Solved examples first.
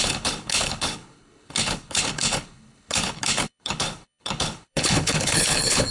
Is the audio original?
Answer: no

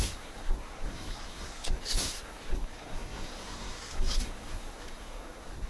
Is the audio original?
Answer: no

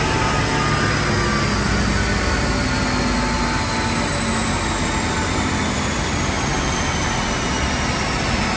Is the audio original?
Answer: yes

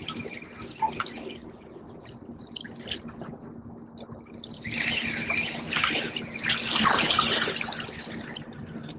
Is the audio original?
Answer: yes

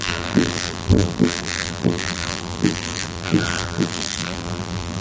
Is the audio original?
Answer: no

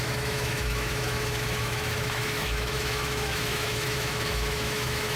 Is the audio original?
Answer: no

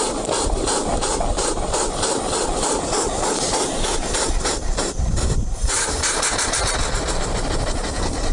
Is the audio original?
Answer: yes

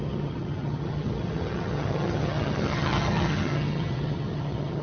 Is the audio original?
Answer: no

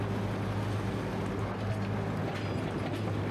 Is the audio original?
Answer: yes